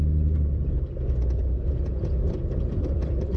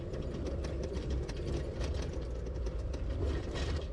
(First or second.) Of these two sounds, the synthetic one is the second